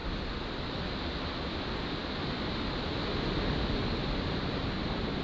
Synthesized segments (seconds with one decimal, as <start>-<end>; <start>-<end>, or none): none